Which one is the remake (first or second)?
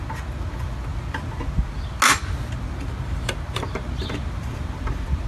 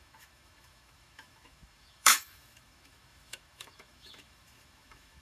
second